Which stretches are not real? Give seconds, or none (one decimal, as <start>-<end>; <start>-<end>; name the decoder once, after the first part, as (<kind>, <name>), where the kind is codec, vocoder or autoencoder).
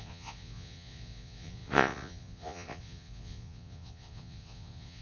0.0-5.0 (vocoder, Vocos)